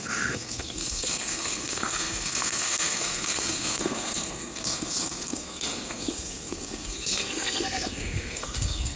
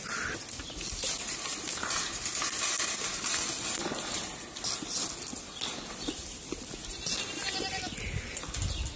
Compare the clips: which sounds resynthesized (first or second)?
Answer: first